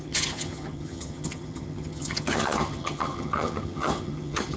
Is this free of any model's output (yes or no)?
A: no